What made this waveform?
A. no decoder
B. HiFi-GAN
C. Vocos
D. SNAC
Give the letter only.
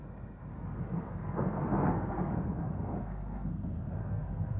D